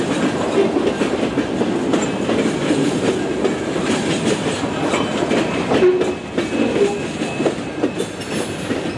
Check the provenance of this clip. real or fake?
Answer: real